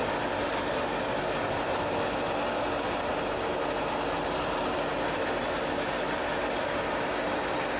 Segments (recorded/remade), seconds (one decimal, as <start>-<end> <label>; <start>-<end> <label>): 0.0-7.8 recorded